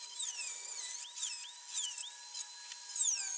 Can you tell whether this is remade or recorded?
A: recorded